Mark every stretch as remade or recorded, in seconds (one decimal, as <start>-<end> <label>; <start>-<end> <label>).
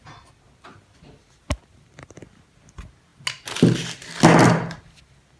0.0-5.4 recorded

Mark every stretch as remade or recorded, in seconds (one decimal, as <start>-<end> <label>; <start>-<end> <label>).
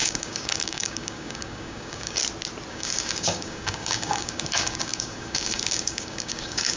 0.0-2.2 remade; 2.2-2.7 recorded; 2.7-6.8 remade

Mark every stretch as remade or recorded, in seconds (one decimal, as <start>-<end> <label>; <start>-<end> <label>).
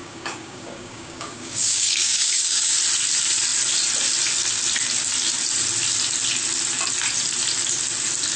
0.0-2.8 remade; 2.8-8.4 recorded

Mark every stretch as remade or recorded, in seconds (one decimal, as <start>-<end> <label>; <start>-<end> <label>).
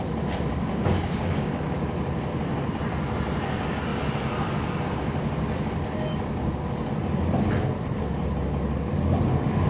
0.0-0.5 recorded; 0.5-1.6 remade; 1.6-6.1 recorded; 6.1-6.7 remade; 6.7-9.7 recorded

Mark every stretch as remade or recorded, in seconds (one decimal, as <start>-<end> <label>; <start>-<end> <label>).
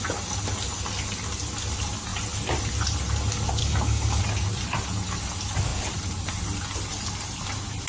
0.0-3.6 recorded; 3.6-4.2 remade; 4.2-7.9 recorded